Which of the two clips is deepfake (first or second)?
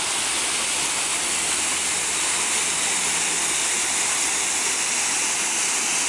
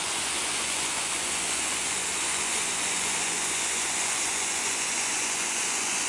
second